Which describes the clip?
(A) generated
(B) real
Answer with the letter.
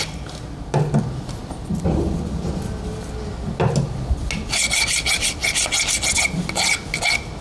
B